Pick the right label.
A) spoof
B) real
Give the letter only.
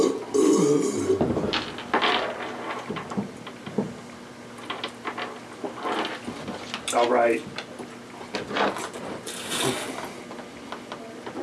B